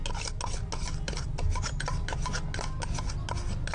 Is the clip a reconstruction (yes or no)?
no